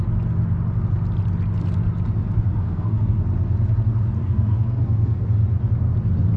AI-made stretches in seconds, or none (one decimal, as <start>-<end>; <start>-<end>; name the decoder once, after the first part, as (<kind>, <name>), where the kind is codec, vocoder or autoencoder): 2.5-3.2 (codec, SNAC); 4.2-5.2